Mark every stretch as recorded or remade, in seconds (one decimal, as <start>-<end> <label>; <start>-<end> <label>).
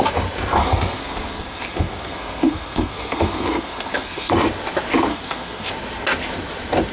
0.0-0.6 recorded; 0.6-4.3 remade; 4.3-5.1 recorded; 5.1-5.7 remade; 5.7-6.9 recorded